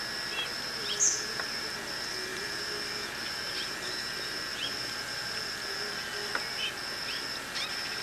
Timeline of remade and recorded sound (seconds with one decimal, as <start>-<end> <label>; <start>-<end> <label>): 0.0-2.3 recorded; 2.3-3.1 remade; 3.1-4.5 recorded; 4.5-6.3 remade; 6.3-8.0 recorded